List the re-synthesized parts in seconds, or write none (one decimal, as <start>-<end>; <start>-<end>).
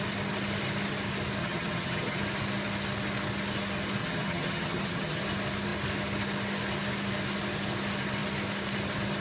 1.4-2.2; 4.0-5.2